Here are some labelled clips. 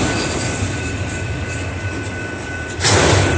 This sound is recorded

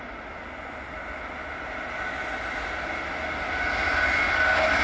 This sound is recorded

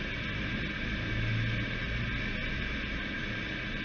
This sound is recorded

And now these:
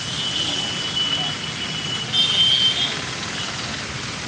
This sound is recorded